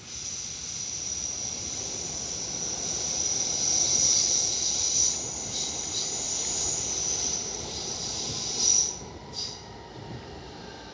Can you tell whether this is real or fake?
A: real